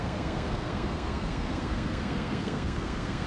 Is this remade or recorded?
remade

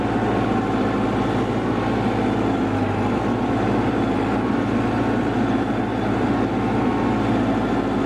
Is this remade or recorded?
recorded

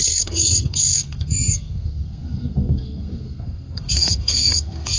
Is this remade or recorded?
remade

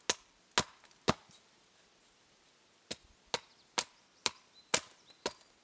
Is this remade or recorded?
recorded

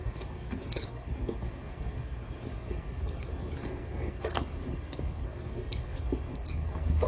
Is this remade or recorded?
remade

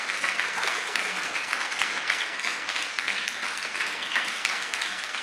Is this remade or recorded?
remade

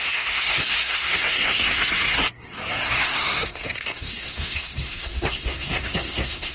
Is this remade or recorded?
remade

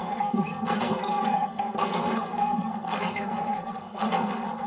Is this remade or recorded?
remade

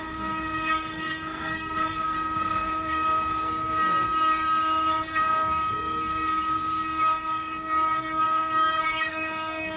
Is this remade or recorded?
remade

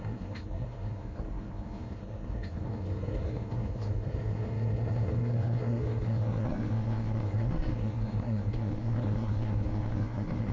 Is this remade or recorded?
remade